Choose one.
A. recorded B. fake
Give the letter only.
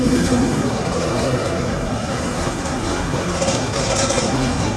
B